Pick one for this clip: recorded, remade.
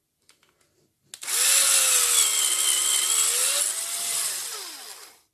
recorded